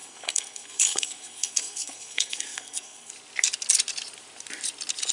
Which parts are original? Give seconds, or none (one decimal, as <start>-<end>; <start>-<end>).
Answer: 3.1-5.1